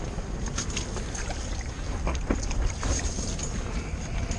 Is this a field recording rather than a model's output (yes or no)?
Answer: yes